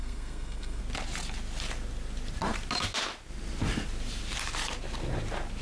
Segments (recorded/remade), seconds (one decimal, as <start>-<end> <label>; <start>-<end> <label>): 0.0-0.8 remade; 0.8-5.6 recorded